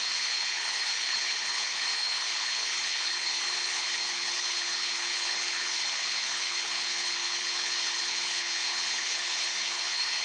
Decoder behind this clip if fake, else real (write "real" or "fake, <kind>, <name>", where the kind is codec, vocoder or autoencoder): fake, codec, HILCodec